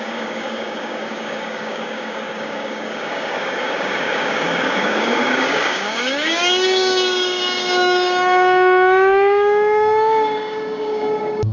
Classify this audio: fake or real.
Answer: fake